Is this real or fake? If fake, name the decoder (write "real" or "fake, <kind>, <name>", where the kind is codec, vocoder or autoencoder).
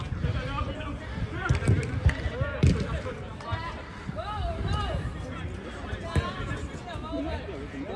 real